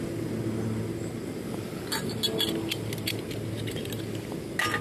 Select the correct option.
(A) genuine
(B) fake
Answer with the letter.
A